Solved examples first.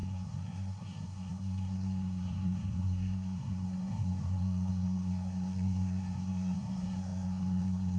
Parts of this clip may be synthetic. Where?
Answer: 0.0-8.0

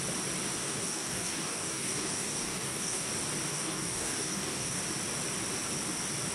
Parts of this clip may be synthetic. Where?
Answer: 0.6-3.1; 3.5-4.8

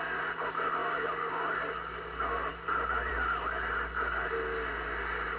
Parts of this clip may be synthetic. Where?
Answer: none

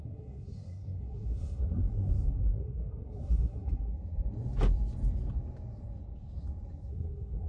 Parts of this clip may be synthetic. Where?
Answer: 0.0-3.9; 6.9-7.5